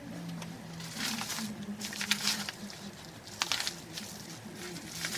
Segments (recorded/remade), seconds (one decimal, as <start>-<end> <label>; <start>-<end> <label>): 0.0-5.2 recorded